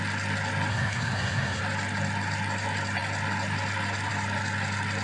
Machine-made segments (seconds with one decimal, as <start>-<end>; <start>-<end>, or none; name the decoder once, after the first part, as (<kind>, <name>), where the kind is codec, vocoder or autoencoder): 0.7-1.6 (codec, SNAC)